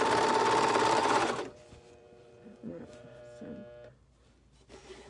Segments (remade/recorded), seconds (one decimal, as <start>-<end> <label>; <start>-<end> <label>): 0.0-1.0 recorded; 1.0-3.2 remade; 3.2-5.1 recorded